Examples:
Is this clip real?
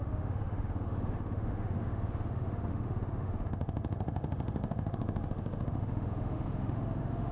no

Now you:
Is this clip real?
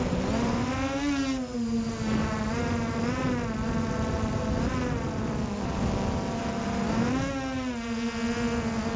yes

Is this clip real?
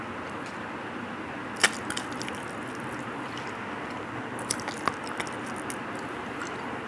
yes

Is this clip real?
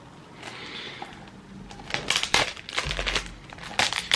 yes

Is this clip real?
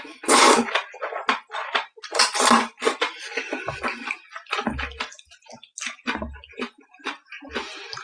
yes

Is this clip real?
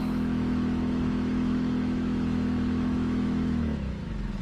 no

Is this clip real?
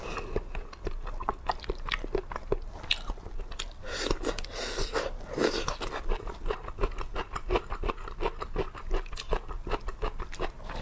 yes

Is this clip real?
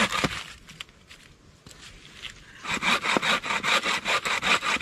yes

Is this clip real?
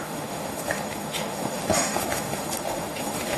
no